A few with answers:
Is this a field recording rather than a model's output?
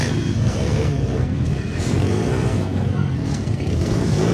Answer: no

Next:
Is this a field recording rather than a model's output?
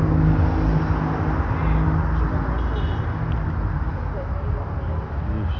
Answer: yes